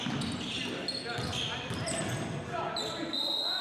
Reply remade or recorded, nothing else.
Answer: recorded